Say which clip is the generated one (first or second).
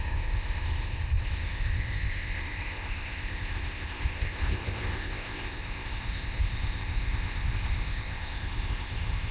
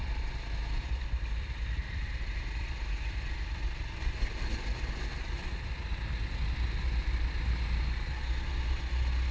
first